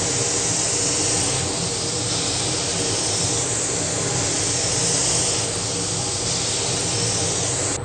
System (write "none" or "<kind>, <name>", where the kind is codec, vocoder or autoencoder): none